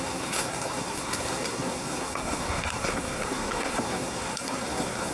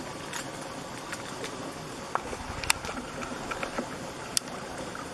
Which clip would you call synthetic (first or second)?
first